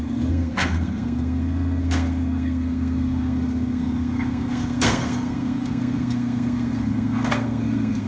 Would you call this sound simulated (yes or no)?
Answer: yes